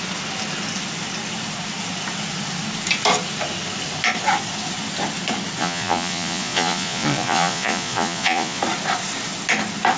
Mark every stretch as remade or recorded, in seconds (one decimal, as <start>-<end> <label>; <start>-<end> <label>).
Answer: 0.0-5.6 recorded; 5.6-8.6 remade; 8.6-10.0 recorded